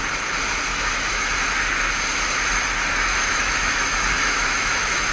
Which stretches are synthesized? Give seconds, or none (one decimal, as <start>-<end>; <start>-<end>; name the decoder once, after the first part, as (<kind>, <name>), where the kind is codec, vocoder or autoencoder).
0.7-1.3 (autoencoder, DAC-VAE); 3.1-5.1